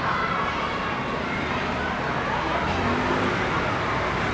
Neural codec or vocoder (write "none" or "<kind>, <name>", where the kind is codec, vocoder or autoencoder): none